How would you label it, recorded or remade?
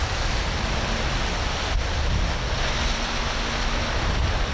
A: recorded